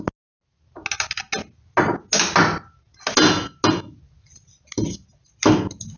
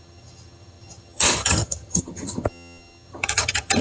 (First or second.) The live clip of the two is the first